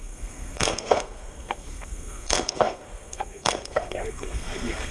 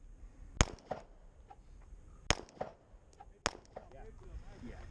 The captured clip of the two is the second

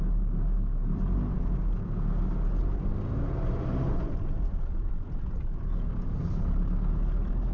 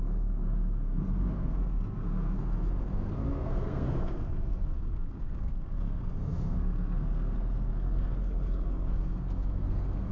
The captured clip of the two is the first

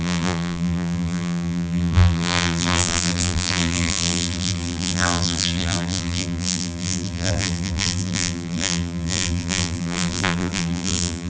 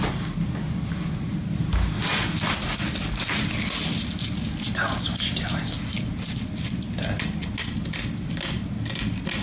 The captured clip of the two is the second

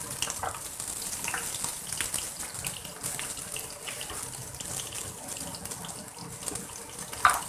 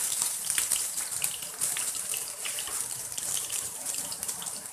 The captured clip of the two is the first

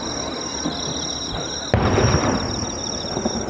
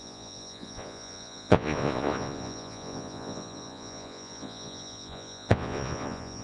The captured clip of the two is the first